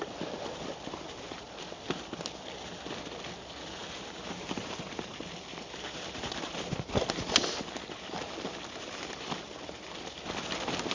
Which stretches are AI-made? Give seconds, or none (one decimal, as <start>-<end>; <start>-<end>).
3.8-4.9